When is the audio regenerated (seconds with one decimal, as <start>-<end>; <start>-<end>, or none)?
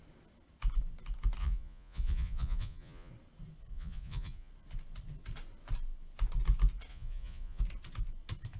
1.4-3.1; 3.7-4.5; 6.9-7.6